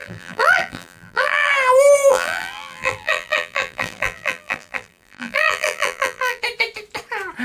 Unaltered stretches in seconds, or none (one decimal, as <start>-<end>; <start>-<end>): 1.5-2.1; 6.4-7.4